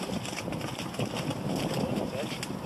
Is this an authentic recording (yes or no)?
yes